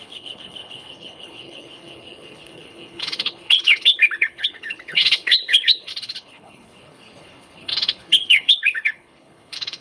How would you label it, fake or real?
fake